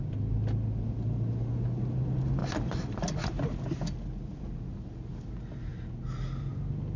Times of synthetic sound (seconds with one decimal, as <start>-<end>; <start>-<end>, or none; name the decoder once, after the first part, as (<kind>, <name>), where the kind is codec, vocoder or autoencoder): none

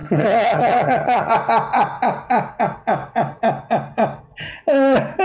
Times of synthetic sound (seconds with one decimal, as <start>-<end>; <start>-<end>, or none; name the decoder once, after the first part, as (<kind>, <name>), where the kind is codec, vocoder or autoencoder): 0.0-1.3 (vocoder, HiFi-GAN)

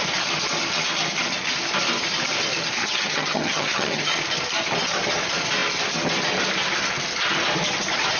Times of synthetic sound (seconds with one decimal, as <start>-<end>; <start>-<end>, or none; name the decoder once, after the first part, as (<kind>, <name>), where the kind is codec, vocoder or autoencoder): 2.8-4.2 (vocoder, HiFi-GAN)

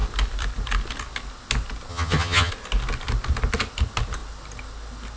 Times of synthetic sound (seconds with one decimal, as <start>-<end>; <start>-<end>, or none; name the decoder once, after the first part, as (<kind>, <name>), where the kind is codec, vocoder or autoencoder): 1.9-2.5 (vocoder, HiFi-GAN)